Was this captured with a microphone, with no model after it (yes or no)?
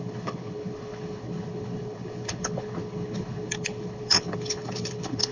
no